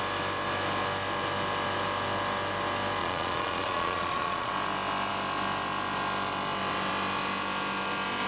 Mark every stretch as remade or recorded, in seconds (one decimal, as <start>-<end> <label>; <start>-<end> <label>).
0.0-3.0 recorded; 3.0-4.5 remade; 4.5-8.3 recorded